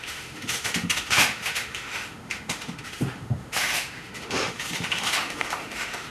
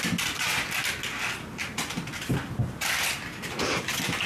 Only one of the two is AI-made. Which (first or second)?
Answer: first